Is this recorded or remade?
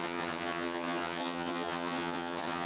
remade